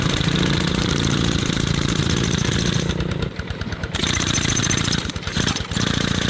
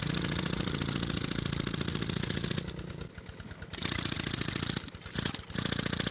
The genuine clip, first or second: second